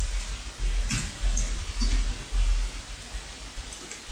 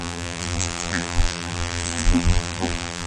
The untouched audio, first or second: first